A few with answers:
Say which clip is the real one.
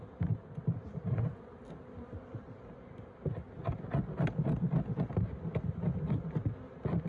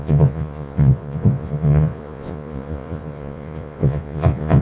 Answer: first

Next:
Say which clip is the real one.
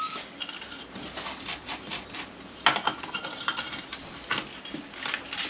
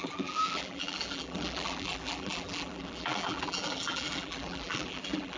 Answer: first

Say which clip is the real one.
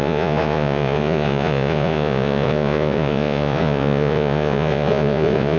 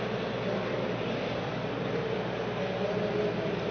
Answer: second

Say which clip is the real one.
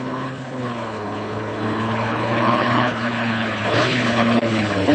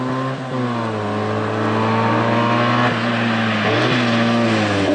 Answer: second